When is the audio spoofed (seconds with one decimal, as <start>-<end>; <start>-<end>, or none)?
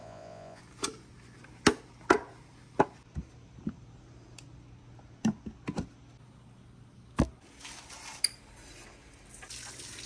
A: 0.0-0.6